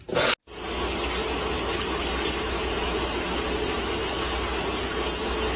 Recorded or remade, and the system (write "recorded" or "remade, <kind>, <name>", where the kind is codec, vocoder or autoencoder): recorded